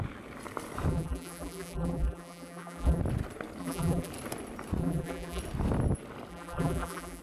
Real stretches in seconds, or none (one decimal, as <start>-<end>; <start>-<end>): 0.0-0.9; 3.0-3.6; 4.1-4.8; 5.4-6.3